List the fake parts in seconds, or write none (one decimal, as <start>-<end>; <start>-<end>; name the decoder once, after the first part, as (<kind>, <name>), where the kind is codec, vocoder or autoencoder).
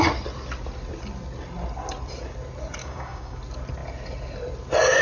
2.8-3.4 (codec, DAC)